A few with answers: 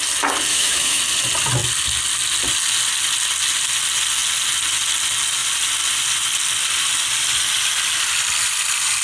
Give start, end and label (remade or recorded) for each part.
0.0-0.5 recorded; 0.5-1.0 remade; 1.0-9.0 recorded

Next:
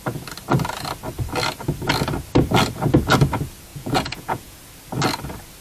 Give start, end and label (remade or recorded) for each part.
0.0-3.7 recorded; 3.7-4.6 remade; 4.6-5.6 recorded

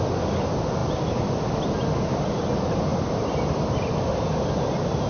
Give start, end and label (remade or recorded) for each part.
0.0-5.1 recorded

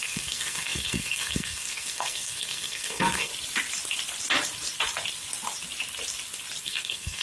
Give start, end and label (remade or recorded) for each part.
0.0-3.3 remade; 3.3-6.6 recorded; 6.6-7.2 remade